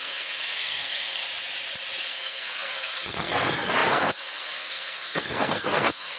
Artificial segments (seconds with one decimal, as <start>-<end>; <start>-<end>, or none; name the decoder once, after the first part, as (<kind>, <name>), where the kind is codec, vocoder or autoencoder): 0.0-1.2 (codec, SNAC); 2.0-6.2